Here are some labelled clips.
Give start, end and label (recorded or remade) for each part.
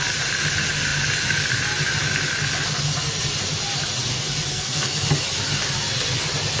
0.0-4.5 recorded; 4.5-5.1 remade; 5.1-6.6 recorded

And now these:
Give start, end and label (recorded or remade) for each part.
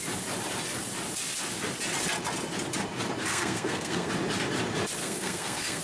0.0-3.3 recorded; 3.3-4.1 remade; 4.1-5.0 recorded; 5.0-5.8 remade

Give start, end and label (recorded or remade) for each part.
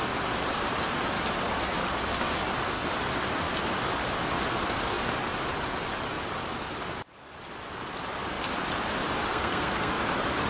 0.0-9.3 recorded; 9.3-9.9 remade; 9.9-10.5 recorded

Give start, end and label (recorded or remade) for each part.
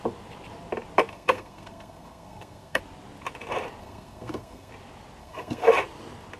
0.0-1.1 recorded; 1.1-2.8 remade; 2.8-3.8 recorded; 3.8-4.7 remade; 4.7-5.2 recorded; 5.2-5.7 remade; 5.7-6.4 recorded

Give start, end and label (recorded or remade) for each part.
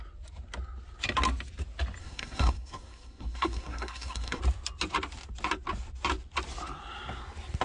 0.0-2.0 recorded; 2.0-4.4 remade; 4.4-7.6 recorded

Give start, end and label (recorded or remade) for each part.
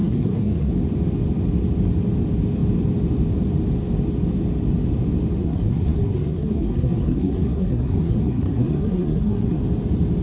0.0-0.7 remade; 0.7-5.4 recorded; 5.4-9.6 remade; 9.6-10.2 recorded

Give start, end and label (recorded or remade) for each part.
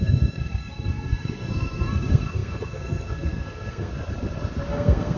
0.0-3.9 remade; 3.9-4.7 recorded; 4.7-5.2 remade